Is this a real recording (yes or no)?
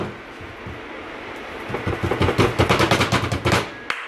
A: yes